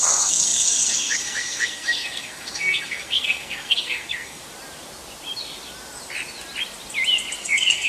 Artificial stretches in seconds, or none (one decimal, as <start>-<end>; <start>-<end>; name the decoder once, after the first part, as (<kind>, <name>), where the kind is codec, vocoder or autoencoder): 0.0-4.4 (codec, SNAC); 7.4-7.9